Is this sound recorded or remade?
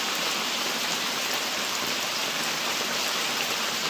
remade